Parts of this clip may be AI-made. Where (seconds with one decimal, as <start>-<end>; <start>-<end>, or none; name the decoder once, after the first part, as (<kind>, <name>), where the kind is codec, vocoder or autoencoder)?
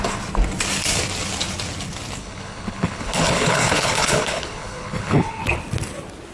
2.2-5.4 (codec, HILCodec)